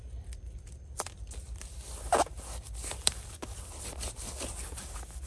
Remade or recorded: recorded